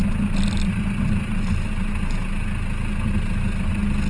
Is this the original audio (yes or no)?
yes